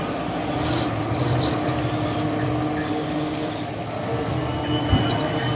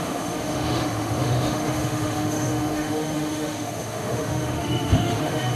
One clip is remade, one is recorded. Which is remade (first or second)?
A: second